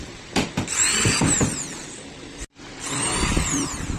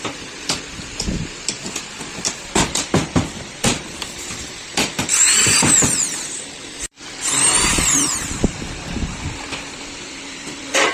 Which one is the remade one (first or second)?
second